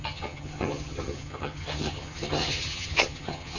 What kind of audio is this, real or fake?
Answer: fake